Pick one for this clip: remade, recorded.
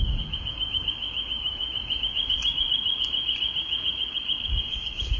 remade